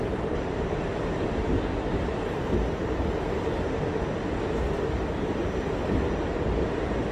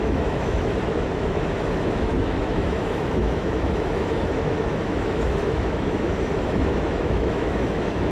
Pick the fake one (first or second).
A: second